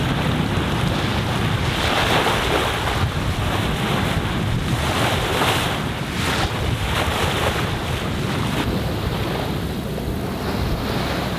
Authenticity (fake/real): real